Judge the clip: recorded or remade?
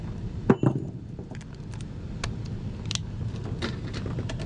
recorded